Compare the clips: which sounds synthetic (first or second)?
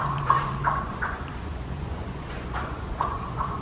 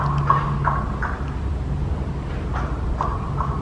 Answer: first